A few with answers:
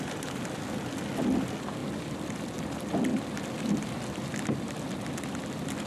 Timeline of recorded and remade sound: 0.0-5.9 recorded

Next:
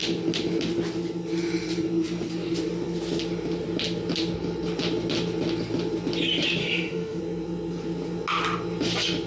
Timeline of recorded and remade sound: 0.0-6.6 recorded; 6.6-7.2 remade; 7.2-9.3 recorded

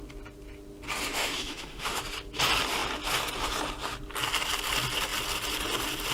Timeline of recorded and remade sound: 0.0-1.1 recorded; 1.1-2.0 remade; 2.0-6.1 recorded

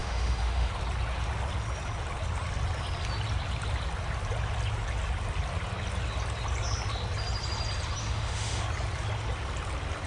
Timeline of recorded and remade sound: 0.0-0.7 remade; 0.7-8.0 recorded; 8.0-8.6 remade; 8.6-10.1 recorded

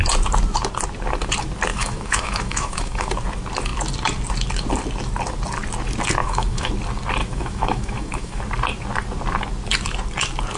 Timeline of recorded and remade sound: 0.0-1.7 recorded; 1.7-3.1 remade; 3.1-6.2 recorded; 6.2-6.7 remade; 6.7-7.2 recorded; 7.2-8.4 remade; 8.4-10.6 recorded

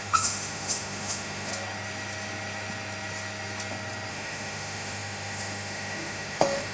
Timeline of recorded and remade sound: 0.0-1.5 remade; 1.5-4.1 recorded; 4.1-6.7 remade

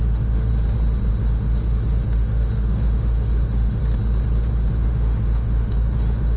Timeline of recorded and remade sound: 0.0-0.5 remade; 0.5-1.1 recorded; 1.1-3.8 remade; 3.8-4.7 recorded; 4.7-6.4 remade

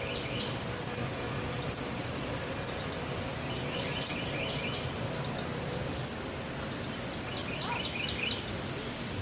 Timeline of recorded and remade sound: 0.0-9.2 recorded